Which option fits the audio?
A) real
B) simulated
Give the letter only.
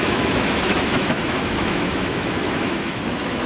B